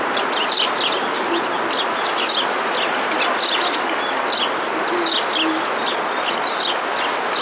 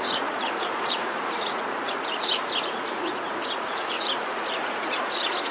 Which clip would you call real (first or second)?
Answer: first